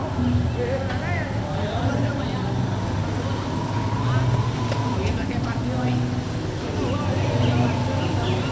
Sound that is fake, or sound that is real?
real